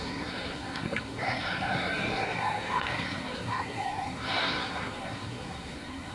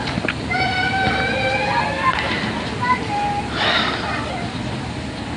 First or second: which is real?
second